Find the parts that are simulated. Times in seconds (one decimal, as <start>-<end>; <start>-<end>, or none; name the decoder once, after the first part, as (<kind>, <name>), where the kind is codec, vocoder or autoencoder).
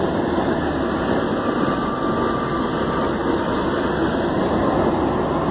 none